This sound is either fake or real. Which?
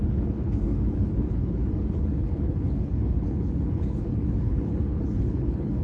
fake